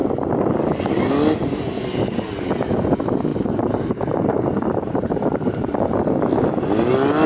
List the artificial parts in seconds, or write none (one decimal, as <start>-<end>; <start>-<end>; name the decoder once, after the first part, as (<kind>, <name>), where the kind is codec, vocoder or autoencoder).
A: 3.3-5.9 (vocoder, BigVGAN v2)

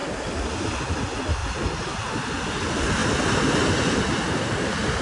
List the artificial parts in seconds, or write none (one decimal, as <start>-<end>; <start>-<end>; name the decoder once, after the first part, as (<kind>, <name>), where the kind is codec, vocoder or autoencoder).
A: none

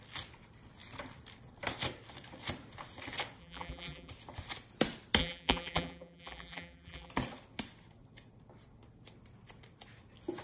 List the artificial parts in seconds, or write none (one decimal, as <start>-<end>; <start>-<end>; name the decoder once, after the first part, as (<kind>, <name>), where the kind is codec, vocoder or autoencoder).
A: 3.4-4.1 (vocoder, BigVGAN v2); 5.2-7.1

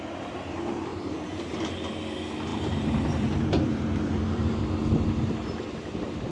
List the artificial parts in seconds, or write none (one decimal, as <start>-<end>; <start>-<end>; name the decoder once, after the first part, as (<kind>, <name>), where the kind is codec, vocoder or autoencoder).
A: 0.9-1.9 (vocoder, BigVGAN v2); 2.5-4.6

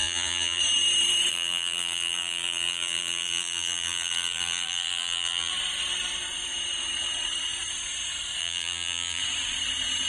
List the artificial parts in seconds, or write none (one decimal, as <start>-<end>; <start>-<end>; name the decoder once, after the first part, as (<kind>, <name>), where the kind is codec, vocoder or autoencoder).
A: 0.0-0.6 (vocoder, BigVGAN v2); 1.3-5.5; 8.4-9.2

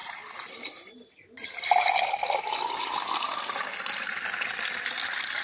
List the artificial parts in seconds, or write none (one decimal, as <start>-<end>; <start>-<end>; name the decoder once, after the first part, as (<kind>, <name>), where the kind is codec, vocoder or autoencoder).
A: none

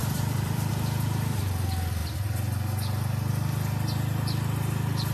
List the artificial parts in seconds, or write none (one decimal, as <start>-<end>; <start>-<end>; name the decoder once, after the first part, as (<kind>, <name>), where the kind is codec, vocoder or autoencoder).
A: 0.0-0.7 (vocoder, BigVGAN v2)